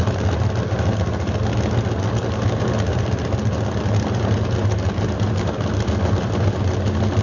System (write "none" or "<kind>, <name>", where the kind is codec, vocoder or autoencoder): none